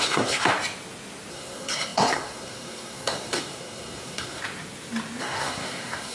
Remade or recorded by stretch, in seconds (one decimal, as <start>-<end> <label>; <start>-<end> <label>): 0.0-0.5 remade; 0.5-1.3 recorded; 1.3-4.4 remade; 4.4-5.2 recorded; 5.2-6.1 remade